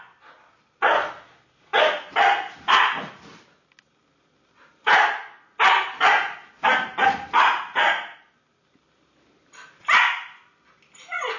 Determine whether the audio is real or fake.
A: real